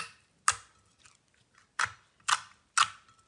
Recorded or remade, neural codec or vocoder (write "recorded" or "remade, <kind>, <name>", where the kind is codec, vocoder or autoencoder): recorded